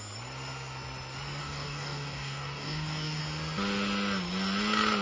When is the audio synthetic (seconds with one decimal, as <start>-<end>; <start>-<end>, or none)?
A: 1.4-3.2